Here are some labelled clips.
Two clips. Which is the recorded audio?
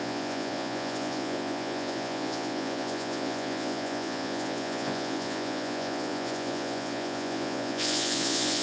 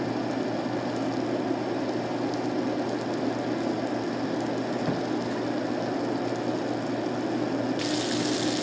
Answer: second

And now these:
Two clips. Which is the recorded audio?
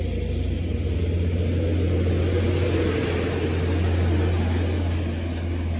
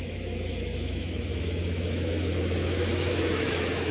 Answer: first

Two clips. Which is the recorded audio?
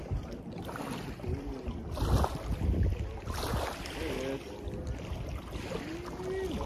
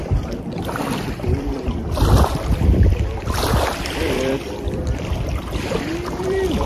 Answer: first